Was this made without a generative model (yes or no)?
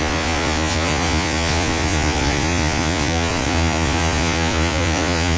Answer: no